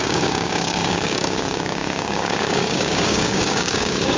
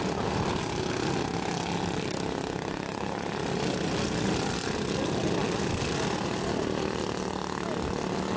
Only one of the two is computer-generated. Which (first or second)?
first